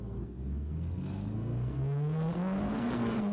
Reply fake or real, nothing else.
fake